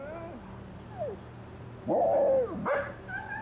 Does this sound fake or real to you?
real